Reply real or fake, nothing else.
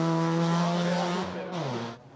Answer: real